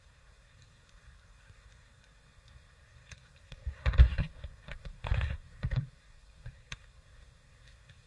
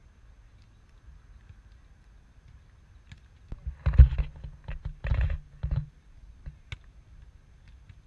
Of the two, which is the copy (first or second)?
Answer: first